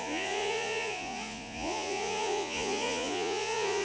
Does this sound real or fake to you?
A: fake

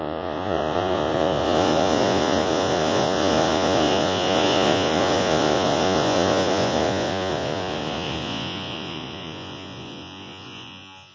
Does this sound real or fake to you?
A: fake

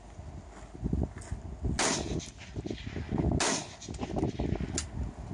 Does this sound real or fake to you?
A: real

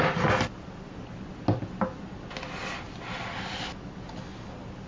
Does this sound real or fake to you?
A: real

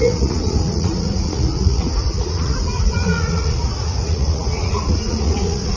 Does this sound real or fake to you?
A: fake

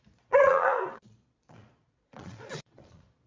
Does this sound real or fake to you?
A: fake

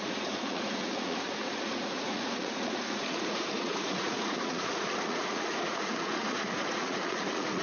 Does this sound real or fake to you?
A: fake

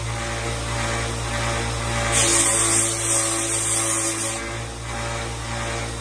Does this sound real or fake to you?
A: real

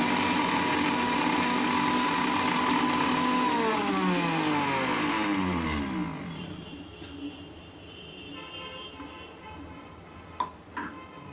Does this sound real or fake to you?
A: real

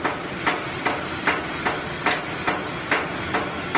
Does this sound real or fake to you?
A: real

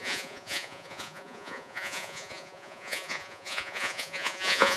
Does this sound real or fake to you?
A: fake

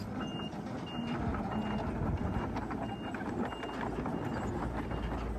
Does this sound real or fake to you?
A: real